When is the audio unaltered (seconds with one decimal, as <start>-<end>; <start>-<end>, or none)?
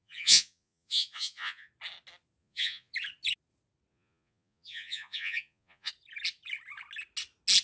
1.7-2.4; 2.9-3.9; 5.9-7.6